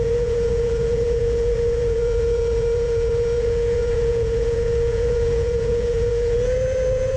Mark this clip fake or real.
fake